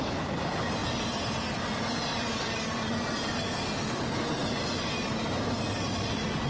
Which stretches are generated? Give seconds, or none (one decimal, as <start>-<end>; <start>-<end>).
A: none